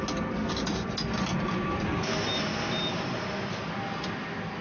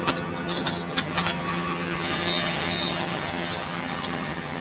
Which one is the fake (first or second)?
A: second